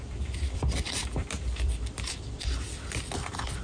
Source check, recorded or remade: remade